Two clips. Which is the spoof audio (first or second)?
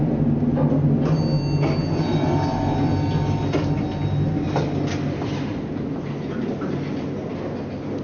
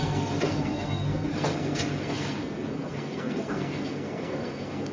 second